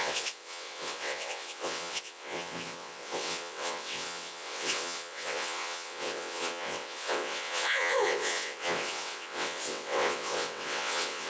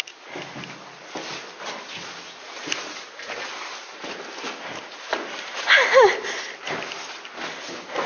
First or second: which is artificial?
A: first